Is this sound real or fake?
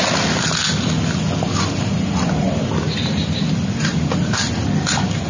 real